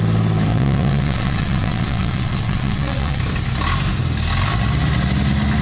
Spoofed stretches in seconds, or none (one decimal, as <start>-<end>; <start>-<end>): 0.5-3.2